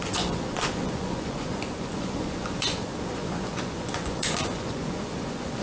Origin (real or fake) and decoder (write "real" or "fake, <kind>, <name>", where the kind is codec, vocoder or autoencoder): fake, vocoder, Vocos